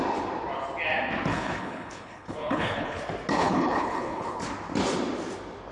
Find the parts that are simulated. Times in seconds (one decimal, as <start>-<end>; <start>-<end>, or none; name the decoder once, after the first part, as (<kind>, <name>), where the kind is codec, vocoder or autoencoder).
1.3-3.0 (codec, HILCodec); 3.4-4.4